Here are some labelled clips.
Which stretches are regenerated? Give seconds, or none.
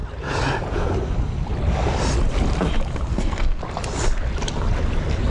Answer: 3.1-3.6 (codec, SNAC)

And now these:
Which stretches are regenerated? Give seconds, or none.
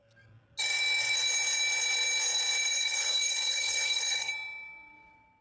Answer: 2.7-4.3 (codec, SNAC)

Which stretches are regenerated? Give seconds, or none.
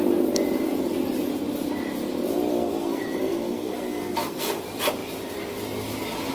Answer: 2.5-4.6 (codec, SNAC)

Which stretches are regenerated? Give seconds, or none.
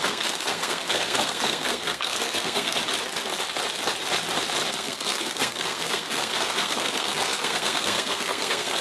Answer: 0.0-2.8 (codec, SNAC); 4.7-8.8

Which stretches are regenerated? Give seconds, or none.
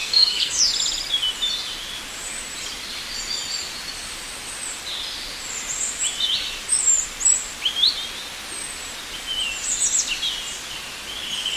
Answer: 0.0-0.6 (codec, SNAC)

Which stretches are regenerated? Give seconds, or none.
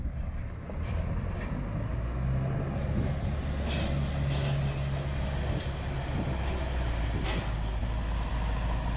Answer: none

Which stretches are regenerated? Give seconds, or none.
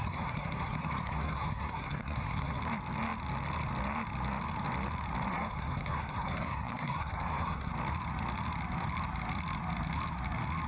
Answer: 0.0-2.6 (codec, SNAC); 5.3-7.7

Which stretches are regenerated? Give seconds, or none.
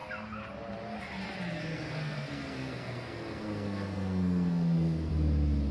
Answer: 1.7-5.1 (codec, SNAC)